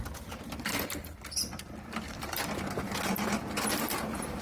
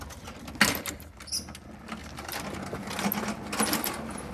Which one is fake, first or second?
first